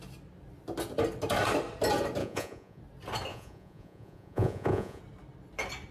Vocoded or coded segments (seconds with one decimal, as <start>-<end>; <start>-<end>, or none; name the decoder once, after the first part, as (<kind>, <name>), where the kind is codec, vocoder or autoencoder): 2.2-2.8 (vocoder, Vocos); 3.3-5.0